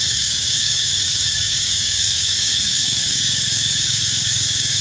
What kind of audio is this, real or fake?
fake